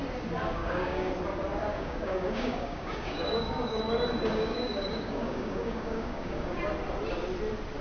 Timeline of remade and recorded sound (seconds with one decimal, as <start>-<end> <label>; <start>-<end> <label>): 0.0-0.6 recorded; 0.6-1.1 remade; 1.1-1.7 recorded; 1.7-3.8 remade; 3.8-4.3 recorded; 4.3-6.6 remade; 6.6-7.8 recorded